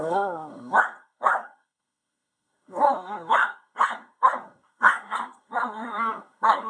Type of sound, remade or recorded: remade